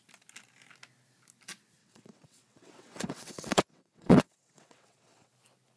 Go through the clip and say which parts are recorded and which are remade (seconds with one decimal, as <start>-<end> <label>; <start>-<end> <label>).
0.0-1.8 recorded; 1.8-5.3 remade; 5.3-5.8 recorded